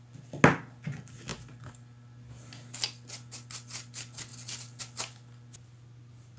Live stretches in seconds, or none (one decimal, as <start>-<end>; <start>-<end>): 0.0-6.4